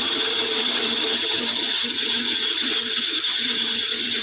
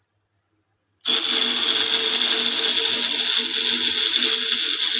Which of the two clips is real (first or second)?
second